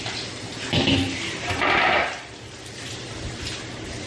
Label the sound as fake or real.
fake